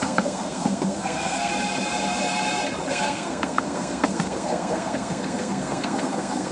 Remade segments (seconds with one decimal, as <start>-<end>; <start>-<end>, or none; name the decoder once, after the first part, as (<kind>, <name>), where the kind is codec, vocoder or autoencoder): 0.0-1.5 (codec, SNAC); 2.9-6.5